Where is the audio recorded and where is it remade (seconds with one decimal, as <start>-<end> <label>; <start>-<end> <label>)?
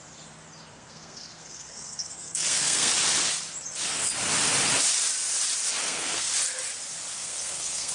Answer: 0.0-0.7 recorded; 0.7-2.9 remade; 2.9-5.8 recorded; 5.8-6.3 remade; 6.3-7.2 recorded; 7.2-7.9 remade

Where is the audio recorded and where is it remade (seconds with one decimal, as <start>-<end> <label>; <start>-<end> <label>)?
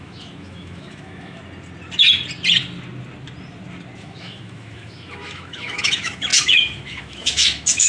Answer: 0.0-1.4 remade; 1.4-4.0 recorded; 4.0-7.9 remade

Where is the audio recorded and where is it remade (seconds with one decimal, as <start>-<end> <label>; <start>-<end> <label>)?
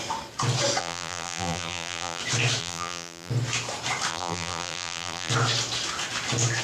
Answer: 0.0-0.8 recorded; 0.8-2.2 remade; 2.2-2.6 recorded; 2.6-3.3 remade; 3.3-4.1 recorded; 4.1-5.3 remade; 5.3-6.6 recorded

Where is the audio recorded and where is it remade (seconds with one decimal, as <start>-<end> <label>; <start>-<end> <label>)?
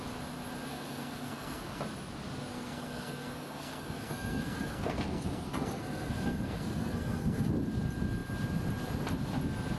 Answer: 0.0-0.7 recorded; 0.7-1.8 remade; 1.8-2.5 recorded; 2.5-7.5 remade; 7.5-9.8 recorded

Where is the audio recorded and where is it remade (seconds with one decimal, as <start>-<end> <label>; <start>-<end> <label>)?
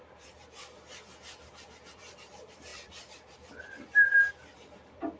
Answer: 0.0-5.2 remade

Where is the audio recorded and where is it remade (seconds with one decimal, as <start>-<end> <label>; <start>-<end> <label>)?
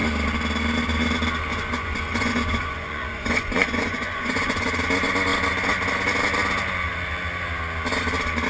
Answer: 0.0-1.5 recorded; 1.5-4.7 remade; 4.7-8.5 recorded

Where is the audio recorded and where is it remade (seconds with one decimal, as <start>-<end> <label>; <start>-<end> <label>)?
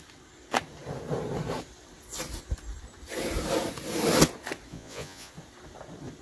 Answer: 0.0-4.7 recorded; 4.7-5.3 remade; 5.3-6.2 recorded